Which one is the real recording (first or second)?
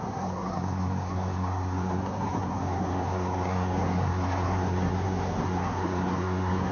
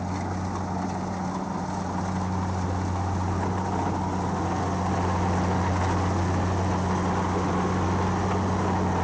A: second